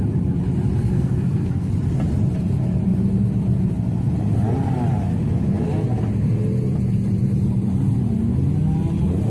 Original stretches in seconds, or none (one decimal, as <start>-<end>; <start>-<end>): 0.0-0.8; 1.7-9.3